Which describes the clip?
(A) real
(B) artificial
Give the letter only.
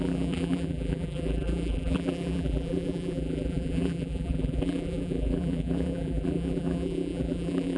B